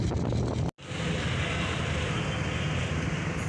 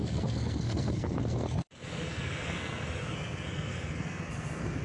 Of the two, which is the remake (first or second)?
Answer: second